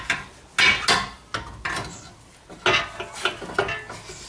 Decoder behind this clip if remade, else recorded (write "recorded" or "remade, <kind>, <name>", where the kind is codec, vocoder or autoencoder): recorded